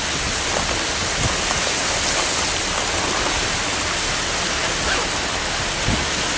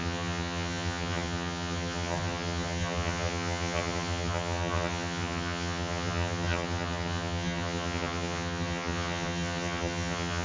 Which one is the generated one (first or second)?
second